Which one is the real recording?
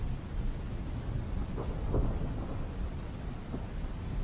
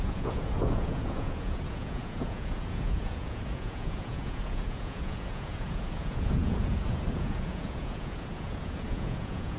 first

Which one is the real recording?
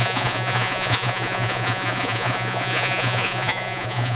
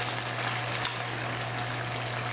second